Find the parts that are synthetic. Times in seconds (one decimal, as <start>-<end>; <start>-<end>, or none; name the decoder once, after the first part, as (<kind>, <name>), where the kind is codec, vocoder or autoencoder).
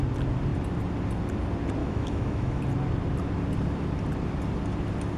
1.8-2.6 (autoencoder, DAC-VAE)